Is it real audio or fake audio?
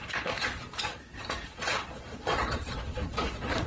fake